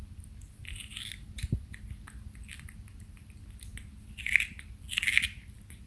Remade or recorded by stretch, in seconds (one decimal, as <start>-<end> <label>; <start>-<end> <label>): 0.0-5.9 recorded